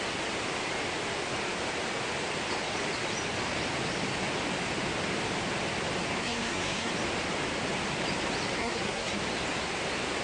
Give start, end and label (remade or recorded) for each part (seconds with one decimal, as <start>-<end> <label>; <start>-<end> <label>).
0.0-6.2 recorded; 6.2-6.9 remade; 6.9-8.6 recorded; 8.6-9.2 remade; 9.2-10.2 recorded

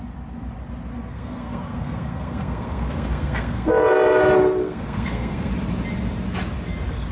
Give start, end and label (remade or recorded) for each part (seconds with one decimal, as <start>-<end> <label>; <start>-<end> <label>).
0.0-1.1 recorded; 1.1-3.7 remade; 3.7-4.6 recorded; 4.6-5.5 remade; 5.5-7.1 recorded

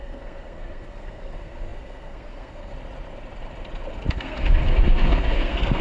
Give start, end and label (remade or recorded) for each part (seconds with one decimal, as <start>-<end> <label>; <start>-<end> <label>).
0.0-2.7 remade; 2.7-4.1 recorded; 4.1-5.8 remade

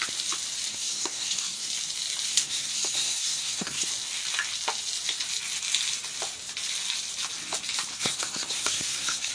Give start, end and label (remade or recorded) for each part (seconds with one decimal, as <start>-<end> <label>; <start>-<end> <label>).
0.0-0.7 recorded; 0.7-1.7 remade; 1.7-2.3 recorded; 2.3-3.9 remade; 3.9-7.9 recorded; 7.9-9.3 remade

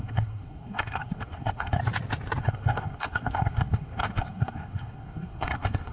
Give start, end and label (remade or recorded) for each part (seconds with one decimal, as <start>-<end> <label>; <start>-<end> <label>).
0.0-1.8 remade; 1.8-2.4 recorded; 2.4-5.9 remade

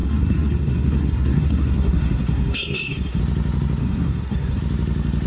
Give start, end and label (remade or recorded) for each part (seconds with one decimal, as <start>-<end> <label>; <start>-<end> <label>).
0.0-3.2 remade; 3.2-3.8 recorded; 3.8-4.6 remade; 4.6-5.3 recorded